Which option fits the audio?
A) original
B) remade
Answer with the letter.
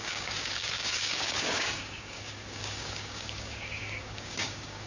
B